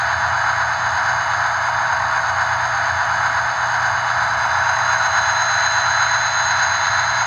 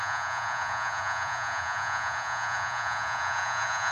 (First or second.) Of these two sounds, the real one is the first